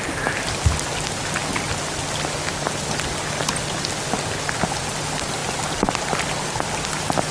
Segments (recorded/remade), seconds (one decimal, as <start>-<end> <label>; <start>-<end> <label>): 0.0-7.3 recorded